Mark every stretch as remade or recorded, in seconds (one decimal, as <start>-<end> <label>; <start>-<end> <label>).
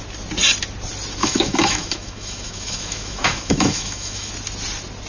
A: 0.0-1.2 recorded; 1.2-4.3 remade; 4.3-5.1 recorded